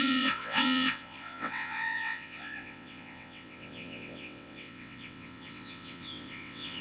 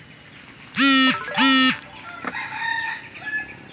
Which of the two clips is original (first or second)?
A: second